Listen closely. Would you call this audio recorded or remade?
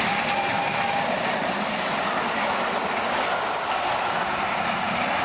recorded